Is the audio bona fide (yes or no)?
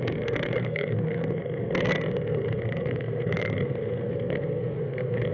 no